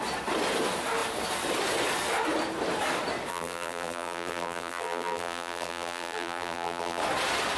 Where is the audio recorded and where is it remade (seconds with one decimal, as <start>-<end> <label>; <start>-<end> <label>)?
0.0-3.3 recorded; 3.3-7.0 remade; 7.0-7.6 recorded